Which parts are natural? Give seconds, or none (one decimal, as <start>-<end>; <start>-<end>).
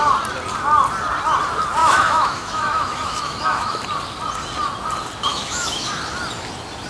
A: 0.0-1.8; 3.8-5.3; 5.9-6.9